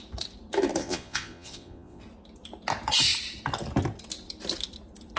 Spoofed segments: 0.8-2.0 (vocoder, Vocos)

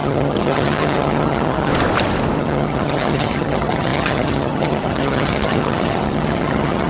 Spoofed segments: 0.0-1.7 (vocoder, HiFi-GAN); 2.4-6.9